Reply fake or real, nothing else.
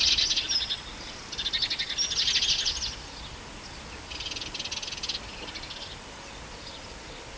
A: real